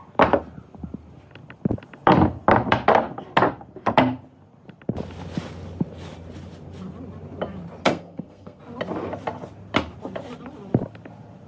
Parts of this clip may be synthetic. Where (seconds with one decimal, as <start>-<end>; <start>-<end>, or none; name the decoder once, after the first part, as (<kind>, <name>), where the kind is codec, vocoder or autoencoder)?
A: 7.9-8.6 (codec, SNAC)